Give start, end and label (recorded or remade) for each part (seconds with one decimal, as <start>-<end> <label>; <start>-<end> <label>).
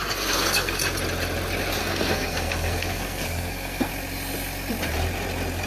0.0-0.8 remade; 0.8-1.8 recorded; 1.8-3.9 remade; 3.9-5.7 recorded